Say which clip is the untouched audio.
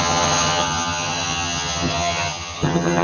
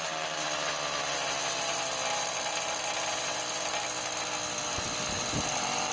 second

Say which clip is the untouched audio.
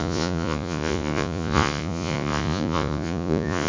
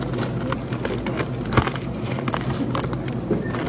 second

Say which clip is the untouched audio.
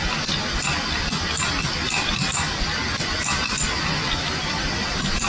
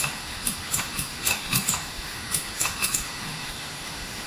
first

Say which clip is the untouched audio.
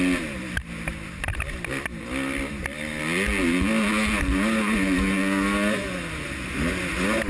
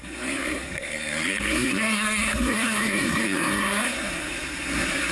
first